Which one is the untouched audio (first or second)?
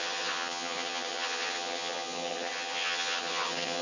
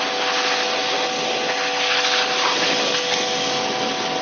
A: second